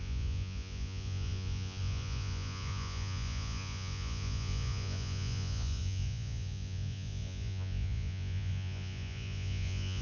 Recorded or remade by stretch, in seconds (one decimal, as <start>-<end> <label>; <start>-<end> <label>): 0.0-10.0 remade